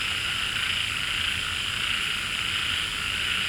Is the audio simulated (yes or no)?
no